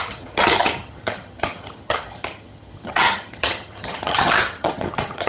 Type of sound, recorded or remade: remade